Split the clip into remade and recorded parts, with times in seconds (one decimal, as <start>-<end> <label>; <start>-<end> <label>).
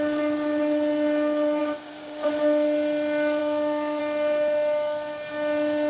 0.0-1.6 recorded; 1.6-2.3 remade; 2.3-3.4 recorded; 3.4-4.0 remade; 4.0-5.9 recorded